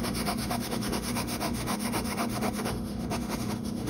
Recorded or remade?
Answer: remade